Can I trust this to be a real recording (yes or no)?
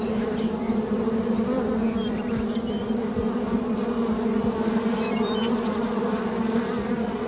yes